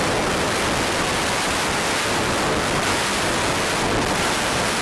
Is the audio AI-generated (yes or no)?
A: no